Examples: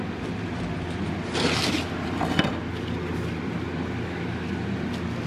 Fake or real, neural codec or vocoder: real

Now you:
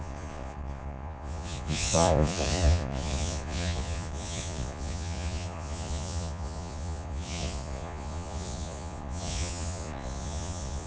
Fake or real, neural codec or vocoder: fake, vocoder, Vocos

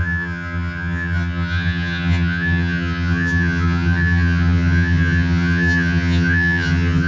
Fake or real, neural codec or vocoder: fake, vocoder, HiFi-GAN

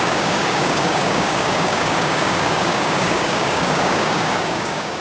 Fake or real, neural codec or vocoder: fake, codec, DAC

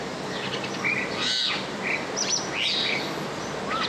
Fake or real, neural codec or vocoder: real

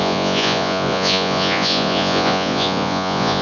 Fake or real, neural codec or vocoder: fake, vocoder, Vocos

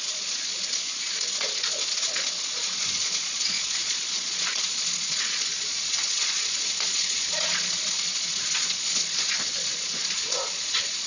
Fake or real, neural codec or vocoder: fake, vocoder, Vocos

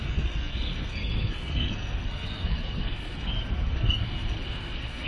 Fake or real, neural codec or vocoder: fake, codec, SNAC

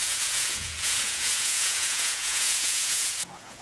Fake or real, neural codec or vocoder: fake, vocoder, Vocos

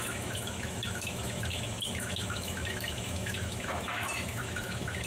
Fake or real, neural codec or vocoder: fake, autoencoder, DAC-VAE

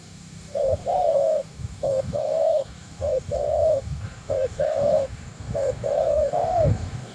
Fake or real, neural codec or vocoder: fake, codec, DAC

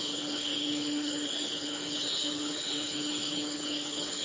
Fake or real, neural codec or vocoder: fake, codec, HILCodec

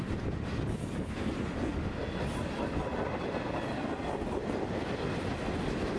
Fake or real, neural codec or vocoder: real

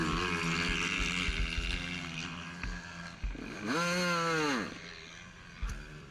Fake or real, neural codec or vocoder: real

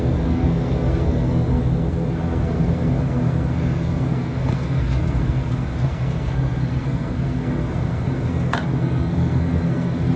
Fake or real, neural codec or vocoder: fake, codec, SNAC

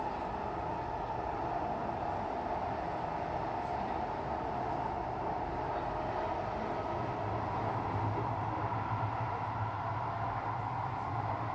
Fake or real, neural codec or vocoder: real